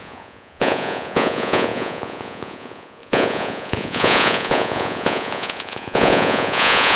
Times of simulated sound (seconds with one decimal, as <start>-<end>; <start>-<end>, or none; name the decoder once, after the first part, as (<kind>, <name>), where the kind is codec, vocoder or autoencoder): 0.0-7.0 (vocoder, Vocos)